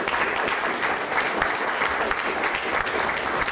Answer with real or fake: real